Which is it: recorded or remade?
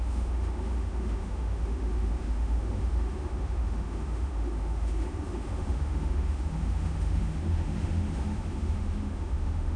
remade